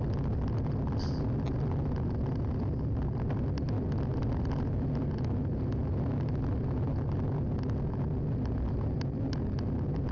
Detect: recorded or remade recorded